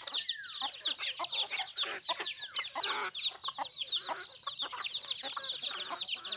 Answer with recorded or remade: recorded